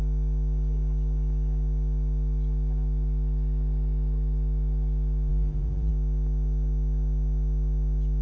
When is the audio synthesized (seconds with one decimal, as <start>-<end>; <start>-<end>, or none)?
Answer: 5.3-5.9